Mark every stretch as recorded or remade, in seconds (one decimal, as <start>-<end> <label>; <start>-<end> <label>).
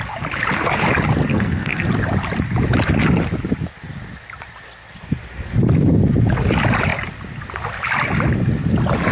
0.0-1.3 recorded; 1.3-1.9 remade; 1.9-9.1 recorded